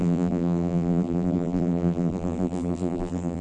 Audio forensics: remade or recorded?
remade